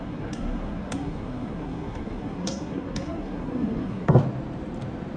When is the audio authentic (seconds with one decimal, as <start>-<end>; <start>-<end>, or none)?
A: 4.2-5.2